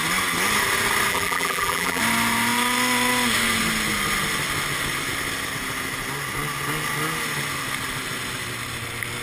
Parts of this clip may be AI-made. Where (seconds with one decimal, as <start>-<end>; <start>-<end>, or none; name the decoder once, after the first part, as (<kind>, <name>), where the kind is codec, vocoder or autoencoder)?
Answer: 1.1-2.0 (vocoder, BigVGAN v2)